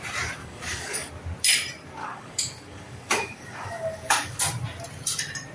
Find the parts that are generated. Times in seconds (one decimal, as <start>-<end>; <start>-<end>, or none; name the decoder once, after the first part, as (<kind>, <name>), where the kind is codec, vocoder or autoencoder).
0.4-1.1 (codec, DAC); 2.0-4.4